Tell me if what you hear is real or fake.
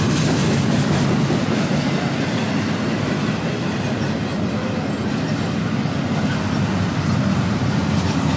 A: real